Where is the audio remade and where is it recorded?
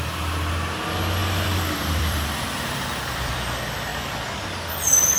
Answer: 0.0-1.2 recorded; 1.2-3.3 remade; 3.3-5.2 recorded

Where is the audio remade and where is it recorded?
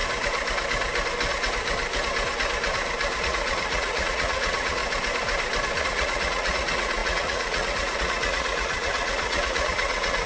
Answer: 0.0-3.2 recorded; 3.2-4.8 remade; 4.8-5.8 recorded; 5.8-10.3 remade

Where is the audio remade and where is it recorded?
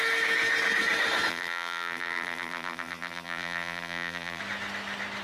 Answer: 0.0-1.3 recorded; 1.3-4.4 remade; 4.4-5.2 recorded